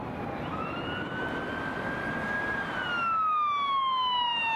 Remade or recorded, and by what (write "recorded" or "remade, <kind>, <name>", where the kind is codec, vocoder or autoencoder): recorded